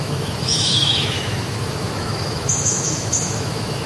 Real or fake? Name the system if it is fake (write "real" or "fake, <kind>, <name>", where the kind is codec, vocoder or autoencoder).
fake, autoencoder, DAC-VAE